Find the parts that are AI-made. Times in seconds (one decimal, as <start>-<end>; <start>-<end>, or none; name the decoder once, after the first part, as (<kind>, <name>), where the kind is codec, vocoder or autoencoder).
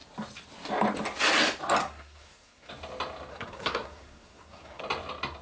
1.8-2.7 (codec, SNAC); 3.3-4.8